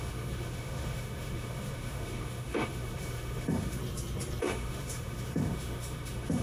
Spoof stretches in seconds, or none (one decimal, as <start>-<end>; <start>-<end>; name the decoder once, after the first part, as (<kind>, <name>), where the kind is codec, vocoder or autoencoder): 0.0-3.8 (autoencoder, DAC-VAE); 4.4-6.4